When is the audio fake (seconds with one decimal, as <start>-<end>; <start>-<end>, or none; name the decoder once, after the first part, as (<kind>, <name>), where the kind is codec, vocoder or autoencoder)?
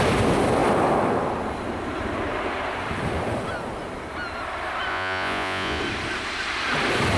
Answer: 4.9-5.8 (vocoder, Vocos)